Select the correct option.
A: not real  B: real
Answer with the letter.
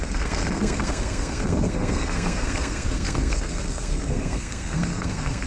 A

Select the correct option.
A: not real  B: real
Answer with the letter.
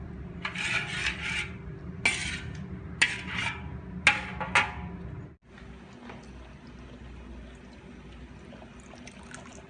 B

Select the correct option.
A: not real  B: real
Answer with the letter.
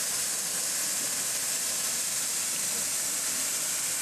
B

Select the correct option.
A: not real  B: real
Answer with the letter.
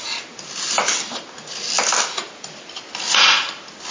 B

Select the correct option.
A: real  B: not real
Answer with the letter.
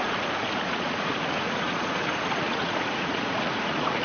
B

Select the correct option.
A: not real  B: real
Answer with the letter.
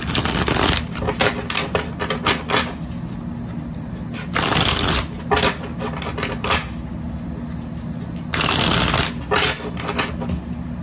B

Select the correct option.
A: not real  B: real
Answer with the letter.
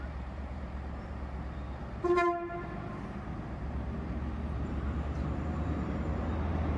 A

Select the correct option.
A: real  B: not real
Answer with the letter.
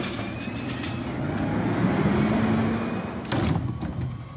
A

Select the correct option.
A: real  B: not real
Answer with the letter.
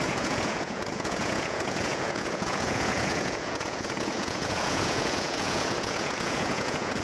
B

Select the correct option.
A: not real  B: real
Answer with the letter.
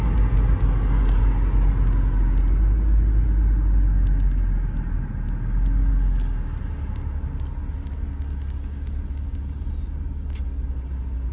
B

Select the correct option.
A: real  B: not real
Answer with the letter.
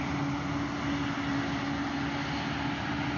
A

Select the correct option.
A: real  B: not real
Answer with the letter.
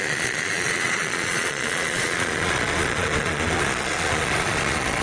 B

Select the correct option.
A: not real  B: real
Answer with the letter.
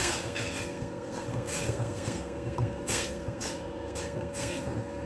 A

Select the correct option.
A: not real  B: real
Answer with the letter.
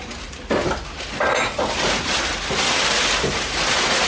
B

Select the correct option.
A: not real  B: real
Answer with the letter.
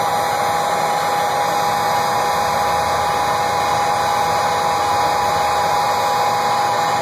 B